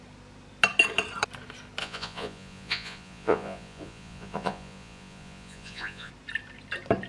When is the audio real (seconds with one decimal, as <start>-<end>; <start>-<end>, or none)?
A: 0.0-1.8; 6.1-7.1